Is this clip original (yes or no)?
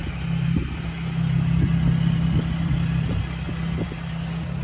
yes